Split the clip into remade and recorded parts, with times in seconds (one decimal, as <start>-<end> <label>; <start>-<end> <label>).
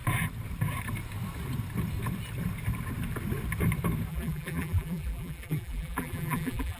0.0-4.1 recorded; 4.1-6.8 remade